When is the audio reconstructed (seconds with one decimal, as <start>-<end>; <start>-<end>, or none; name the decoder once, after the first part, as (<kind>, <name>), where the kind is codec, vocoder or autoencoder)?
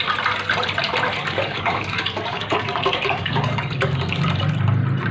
1.2-4.2 (codec, DAC)